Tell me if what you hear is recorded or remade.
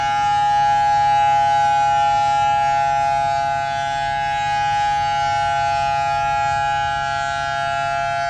recorded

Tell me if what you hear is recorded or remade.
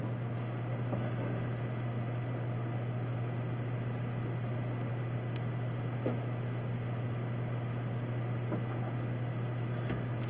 recorded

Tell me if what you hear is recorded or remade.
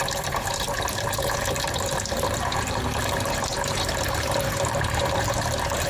remade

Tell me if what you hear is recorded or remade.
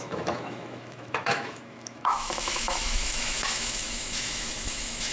remade